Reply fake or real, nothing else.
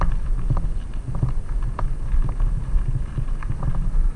real